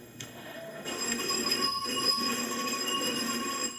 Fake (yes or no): yes